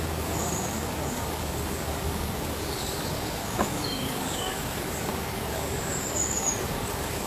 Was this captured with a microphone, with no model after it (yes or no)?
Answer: no